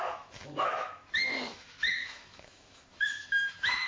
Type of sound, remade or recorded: remade